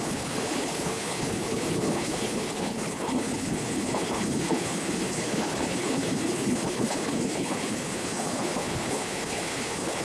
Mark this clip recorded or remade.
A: remade